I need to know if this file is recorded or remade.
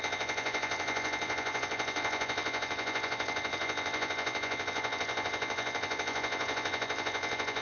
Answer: remade